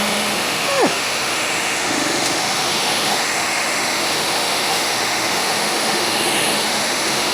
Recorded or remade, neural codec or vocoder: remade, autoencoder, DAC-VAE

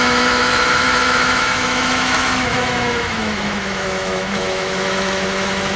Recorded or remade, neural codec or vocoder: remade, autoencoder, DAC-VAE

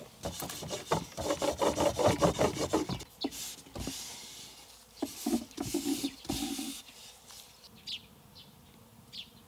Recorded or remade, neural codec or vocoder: recorded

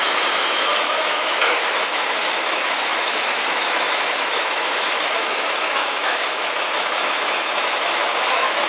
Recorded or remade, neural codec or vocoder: remade, autoencoder, DAC-VAE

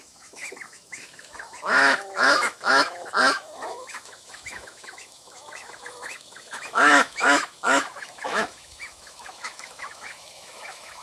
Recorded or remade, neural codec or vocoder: remade, autoencoder, DAC-VAE